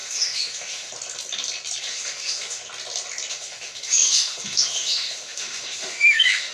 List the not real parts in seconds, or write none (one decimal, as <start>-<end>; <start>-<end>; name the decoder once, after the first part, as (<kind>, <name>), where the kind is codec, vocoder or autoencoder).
0.0-0.9 (autoencoder, DAC-VAE); 1.8-2.6; 3.3-6.5